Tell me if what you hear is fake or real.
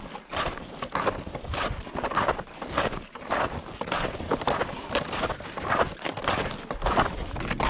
real